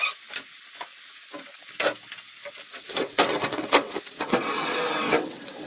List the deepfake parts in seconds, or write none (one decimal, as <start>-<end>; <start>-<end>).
2.6-5.7